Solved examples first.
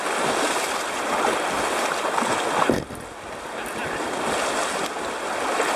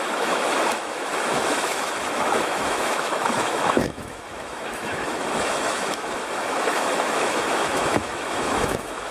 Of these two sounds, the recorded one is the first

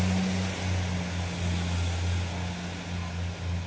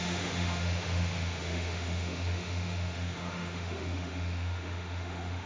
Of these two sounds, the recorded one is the first